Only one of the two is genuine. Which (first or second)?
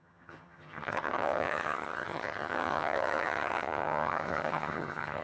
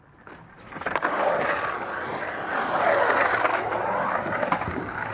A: second